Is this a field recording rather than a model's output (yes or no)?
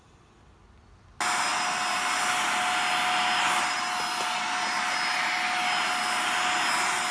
yes